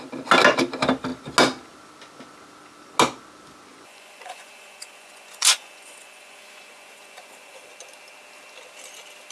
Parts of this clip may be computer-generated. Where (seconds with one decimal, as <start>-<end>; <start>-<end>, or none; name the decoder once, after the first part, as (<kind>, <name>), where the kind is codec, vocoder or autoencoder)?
3.7-7.7 (vocoder, Vocos)

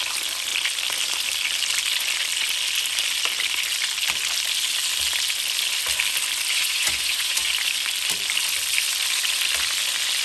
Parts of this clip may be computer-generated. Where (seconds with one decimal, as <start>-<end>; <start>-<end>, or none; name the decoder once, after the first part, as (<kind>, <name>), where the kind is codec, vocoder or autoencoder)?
6.5-7.5 (vocoder, Vocos)

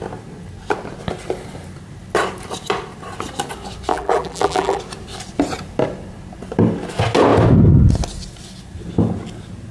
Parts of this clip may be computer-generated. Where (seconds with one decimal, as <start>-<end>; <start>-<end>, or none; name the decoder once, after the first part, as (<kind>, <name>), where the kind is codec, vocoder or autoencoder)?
3.9-4.8 (vocoder, BigVGAN v2)

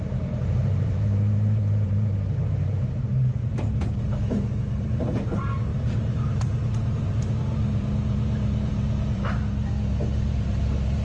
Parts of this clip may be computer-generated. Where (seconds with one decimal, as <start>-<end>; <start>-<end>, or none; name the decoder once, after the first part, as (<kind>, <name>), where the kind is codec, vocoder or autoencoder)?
0.0-11.0 (vocoder, BigVGAN v2)

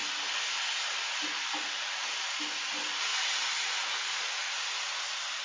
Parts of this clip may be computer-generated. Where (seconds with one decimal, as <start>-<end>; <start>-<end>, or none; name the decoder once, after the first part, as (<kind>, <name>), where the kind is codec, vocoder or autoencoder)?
none